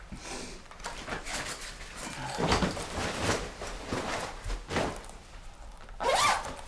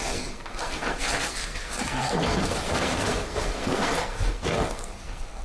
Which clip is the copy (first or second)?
second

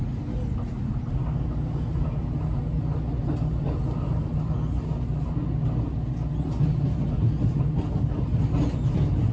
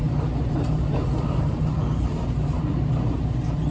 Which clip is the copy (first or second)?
second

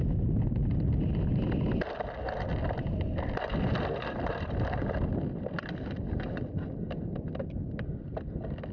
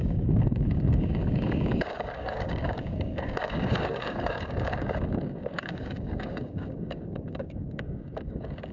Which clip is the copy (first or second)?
second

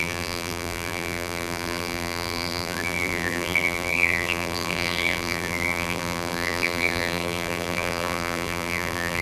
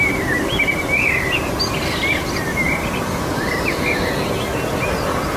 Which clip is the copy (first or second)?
first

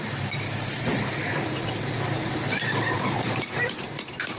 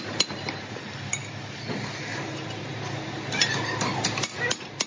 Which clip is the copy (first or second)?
first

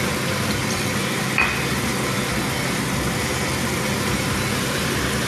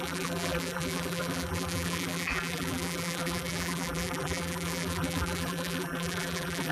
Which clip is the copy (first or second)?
second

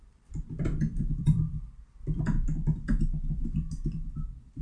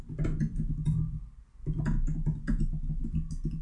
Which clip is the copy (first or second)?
first